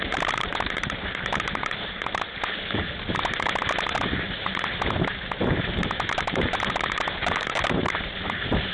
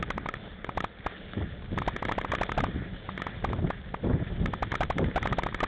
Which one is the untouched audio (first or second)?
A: second